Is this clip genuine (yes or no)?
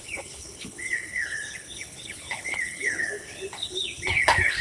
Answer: no